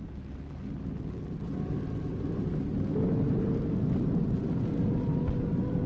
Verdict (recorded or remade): recorded